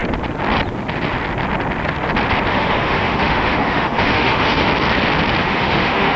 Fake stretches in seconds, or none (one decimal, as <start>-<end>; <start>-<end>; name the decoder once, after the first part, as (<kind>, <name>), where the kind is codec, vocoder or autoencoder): 2.5-4.6 (autoencoder, DAC-VAE); 5.4-6.2